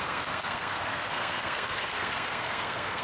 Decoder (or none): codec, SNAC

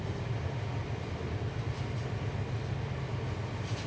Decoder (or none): none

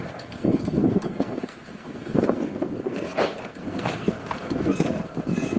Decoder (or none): codec, SNAC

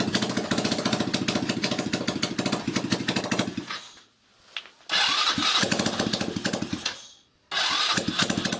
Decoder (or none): none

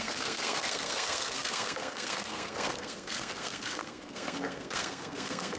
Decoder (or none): codec, SNAC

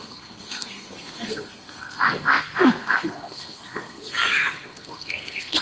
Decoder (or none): codec, SNAC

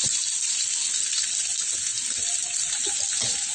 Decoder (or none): none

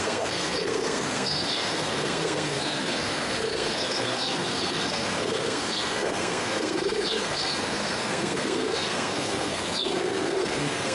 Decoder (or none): codec, SNAC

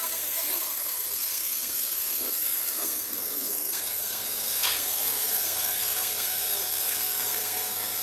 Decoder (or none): codec, SNAC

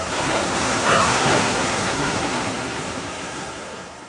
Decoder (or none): codec, SNAC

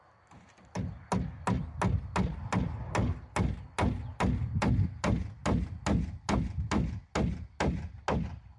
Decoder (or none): none